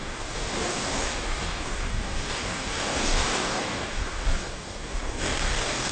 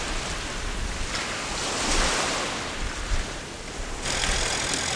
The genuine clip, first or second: second